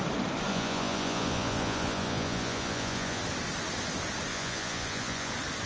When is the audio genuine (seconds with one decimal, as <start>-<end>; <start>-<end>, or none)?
0.0-0.5; 3.2-4.3; 5.3-5.7